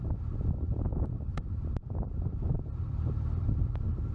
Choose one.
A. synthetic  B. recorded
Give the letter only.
B